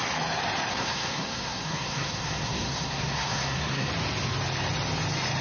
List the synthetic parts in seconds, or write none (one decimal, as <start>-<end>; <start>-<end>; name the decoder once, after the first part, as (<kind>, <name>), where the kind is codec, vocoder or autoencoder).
0.7-3.9 (codec, SNAC)